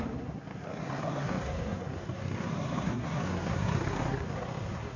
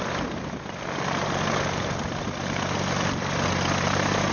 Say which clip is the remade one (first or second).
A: first